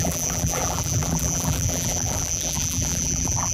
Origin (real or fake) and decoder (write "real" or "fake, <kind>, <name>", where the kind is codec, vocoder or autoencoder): fake, vocoder, BigVGAN v2